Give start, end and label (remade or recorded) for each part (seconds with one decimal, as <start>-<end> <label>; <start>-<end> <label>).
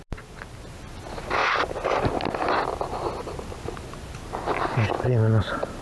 0.0-5.8 recorded